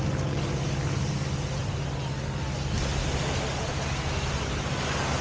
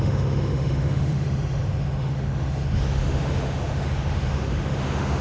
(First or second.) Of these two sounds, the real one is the first